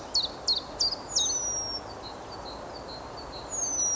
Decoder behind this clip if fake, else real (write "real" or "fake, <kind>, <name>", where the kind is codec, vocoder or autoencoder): real